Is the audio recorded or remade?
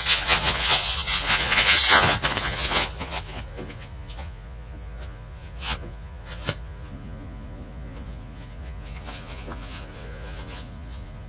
remade